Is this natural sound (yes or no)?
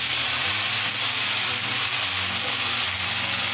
yes